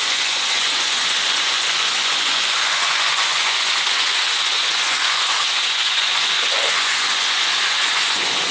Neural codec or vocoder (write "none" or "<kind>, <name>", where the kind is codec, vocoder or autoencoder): vocoder, Vocos